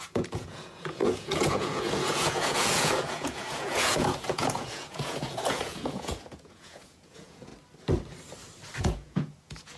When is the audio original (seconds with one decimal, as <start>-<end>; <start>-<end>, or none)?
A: 7.5-8.8